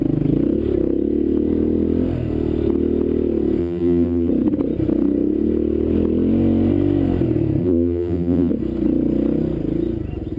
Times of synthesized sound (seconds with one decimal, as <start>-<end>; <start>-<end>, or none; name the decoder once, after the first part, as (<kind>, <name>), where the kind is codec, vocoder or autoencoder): 3.6-4.3 (vocoder, BigVGAN v2); 7.6-8.5